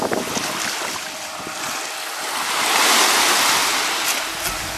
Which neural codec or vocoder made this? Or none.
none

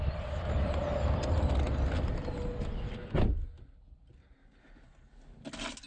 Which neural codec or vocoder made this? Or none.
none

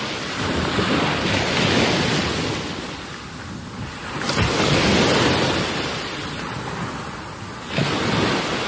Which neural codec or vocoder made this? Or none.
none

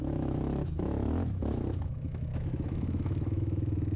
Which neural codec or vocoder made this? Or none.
autoencoder, DAC-VAE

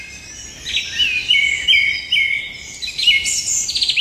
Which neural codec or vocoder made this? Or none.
none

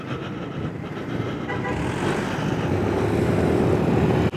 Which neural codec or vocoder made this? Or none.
none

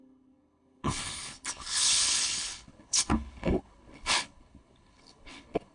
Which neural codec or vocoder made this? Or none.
codec, HILCodec